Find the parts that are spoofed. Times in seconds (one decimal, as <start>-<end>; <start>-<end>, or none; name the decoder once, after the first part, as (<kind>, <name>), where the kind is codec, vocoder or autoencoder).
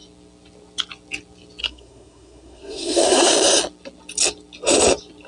1.6-3.3 (codec, SNAC)